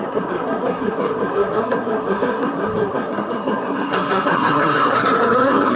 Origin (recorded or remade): remade